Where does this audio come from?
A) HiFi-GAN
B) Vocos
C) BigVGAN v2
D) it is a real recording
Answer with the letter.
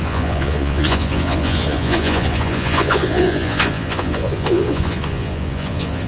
B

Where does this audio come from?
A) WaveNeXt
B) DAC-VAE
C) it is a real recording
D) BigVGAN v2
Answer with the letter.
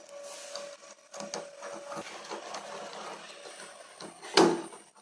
C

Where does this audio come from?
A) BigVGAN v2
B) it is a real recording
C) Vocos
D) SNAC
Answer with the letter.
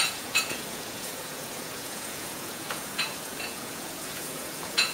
C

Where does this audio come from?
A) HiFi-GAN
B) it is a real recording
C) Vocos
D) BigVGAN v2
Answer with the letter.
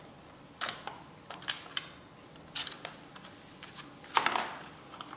B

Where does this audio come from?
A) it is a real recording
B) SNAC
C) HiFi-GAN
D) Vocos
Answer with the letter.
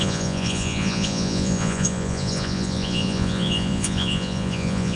D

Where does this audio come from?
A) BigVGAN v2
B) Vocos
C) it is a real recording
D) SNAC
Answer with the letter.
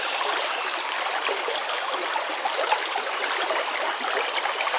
C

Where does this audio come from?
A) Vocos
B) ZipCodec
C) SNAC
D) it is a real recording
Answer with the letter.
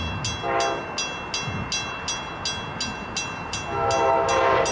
D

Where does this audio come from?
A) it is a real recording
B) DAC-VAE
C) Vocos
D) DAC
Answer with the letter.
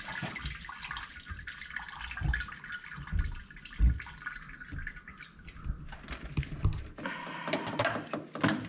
A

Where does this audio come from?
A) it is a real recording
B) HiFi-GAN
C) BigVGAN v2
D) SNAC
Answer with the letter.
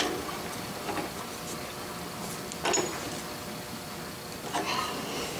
A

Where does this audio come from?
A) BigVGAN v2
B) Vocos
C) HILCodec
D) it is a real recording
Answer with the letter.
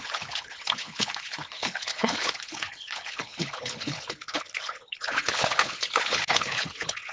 C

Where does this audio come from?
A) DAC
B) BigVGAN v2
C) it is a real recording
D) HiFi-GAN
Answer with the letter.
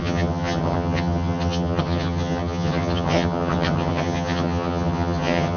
D